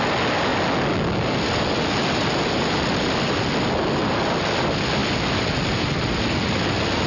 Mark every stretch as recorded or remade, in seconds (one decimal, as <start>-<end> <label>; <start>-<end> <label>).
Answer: 0.0-7.1 recorded